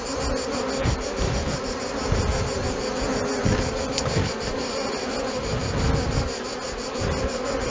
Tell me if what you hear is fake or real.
real